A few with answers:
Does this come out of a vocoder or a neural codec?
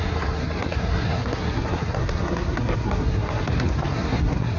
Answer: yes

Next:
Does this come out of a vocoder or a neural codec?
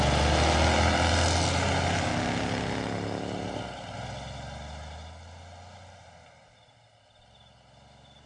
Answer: no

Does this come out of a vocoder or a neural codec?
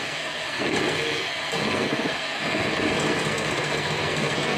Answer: yes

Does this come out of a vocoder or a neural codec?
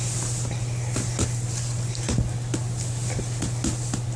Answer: no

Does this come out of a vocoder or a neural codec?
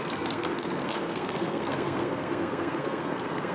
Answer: yes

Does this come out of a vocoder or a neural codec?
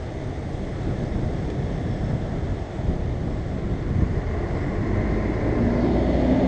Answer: no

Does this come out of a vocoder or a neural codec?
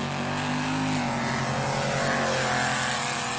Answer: no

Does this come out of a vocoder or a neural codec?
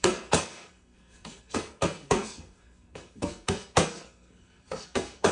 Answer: yes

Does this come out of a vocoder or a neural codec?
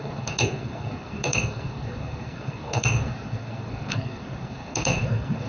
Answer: yes